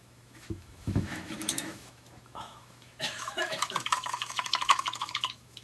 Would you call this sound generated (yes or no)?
yes